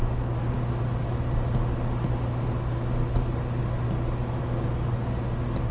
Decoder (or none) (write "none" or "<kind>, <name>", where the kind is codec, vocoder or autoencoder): none